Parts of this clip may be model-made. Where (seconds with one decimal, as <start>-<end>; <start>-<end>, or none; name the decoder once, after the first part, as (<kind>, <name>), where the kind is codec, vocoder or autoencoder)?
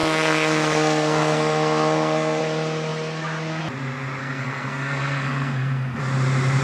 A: 0.0-2.4 (codec, SNAC); 4.2-6.0